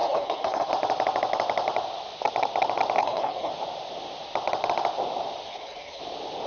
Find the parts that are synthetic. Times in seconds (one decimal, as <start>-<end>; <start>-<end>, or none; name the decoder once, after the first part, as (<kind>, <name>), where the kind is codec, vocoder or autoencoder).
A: 0.0-0.7 (codec, HILCodec); 3.0-3.5; 5.5-6.0